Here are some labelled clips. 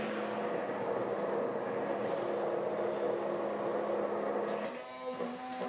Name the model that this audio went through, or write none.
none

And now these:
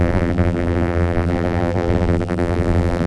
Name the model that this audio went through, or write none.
vocoder, BigVGAN v2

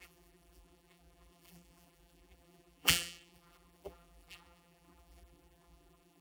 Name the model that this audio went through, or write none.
vocoder, BigVGAN v2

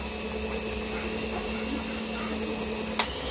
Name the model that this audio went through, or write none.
none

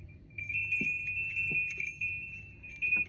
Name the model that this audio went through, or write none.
vocoder, BigVGAN v2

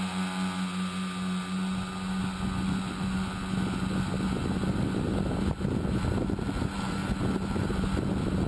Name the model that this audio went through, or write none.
none